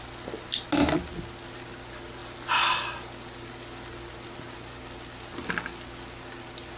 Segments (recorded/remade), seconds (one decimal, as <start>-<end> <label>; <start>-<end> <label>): 0.0-6.8 recorded